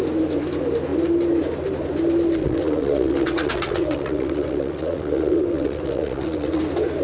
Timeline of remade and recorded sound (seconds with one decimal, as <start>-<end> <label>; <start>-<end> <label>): 0.0-2.4 recorded; 2.4-6.6 remade; 6.6-7.0 recorded